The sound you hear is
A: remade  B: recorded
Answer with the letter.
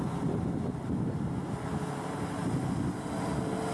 B